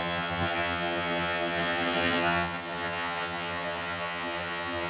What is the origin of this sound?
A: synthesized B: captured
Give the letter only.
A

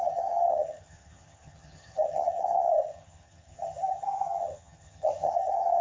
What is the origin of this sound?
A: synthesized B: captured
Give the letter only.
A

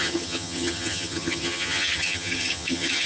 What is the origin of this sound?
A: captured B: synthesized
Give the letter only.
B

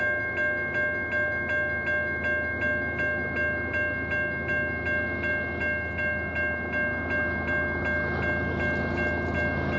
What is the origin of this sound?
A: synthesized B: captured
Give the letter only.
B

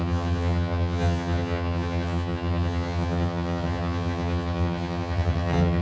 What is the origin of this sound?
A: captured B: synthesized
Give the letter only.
B